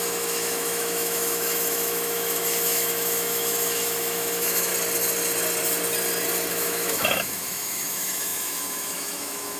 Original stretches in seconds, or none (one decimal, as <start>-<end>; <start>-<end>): 4.7-6.5